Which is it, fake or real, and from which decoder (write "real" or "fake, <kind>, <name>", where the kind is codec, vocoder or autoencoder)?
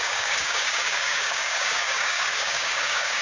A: fake, codec, DAC